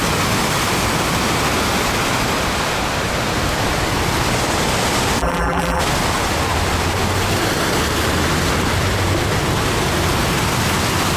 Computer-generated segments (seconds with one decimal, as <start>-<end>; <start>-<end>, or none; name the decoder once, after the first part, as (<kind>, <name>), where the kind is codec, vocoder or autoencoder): 5.2-5.8 (vocoder, BigVGAN v2)

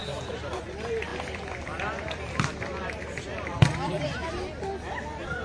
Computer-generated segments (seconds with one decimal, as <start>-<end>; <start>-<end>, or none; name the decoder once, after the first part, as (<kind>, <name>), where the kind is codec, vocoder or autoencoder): 0.0-0.6 (vocoder, BigVGAN v2); 1.1-4.3